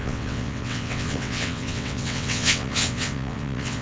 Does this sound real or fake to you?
fake